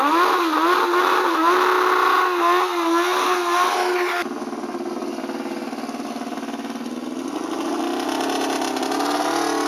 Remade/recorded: recorded